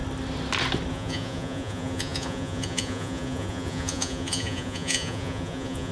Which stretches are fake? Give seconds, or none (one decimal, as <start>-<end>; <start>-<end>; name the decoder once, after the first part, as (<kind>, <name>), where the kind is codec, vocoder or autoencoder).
0.9-5.9 (vocoder, Vocos)